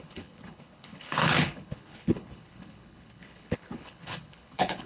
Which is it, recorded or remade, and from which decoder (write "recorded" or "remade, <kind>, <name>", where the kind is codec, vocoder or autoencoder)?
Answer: remade, codec, HILCodec